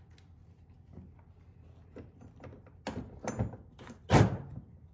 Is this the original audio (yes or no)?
yes